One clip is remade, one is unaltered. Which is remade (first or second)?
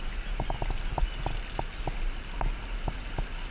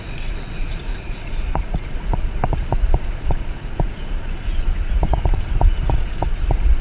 second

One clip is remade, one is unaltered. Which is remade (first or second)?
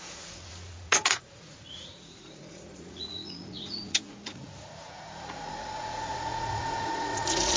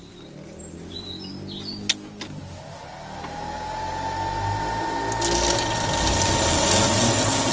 first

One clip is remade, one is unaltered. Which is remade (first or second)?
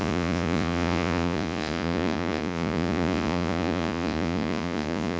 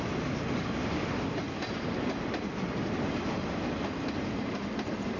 first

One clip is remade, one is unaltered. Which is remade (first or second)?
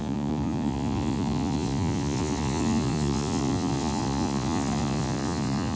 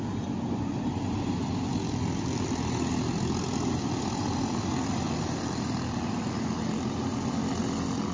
first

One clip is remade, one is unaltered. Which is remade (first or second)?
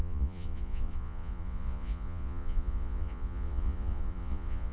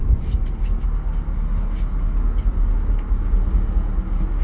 first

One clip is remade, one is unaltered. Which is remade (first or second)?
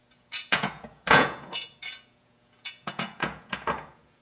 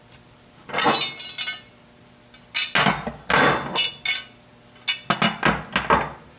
first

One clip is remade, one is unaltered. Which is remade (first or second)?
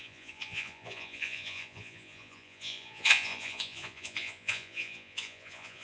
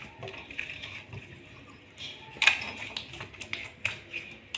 first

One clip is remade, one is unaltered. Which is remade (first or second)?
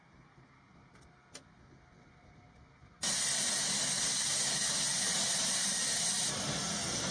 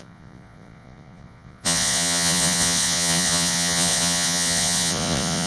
second